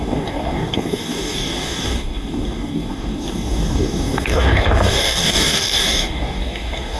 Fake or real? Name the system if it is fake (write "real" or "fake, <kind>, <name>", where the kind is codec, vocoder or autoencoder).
fake, codec, DAC